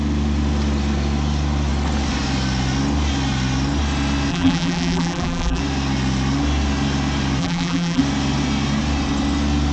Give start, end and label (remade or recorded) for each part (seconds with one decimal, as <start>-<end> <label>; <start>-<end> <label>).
0.0-4.3 recorded; 4.3-5.6 remade; 5.6-7.4 recorded; 7.4-8.0 remade; 8.0-9.7 recorded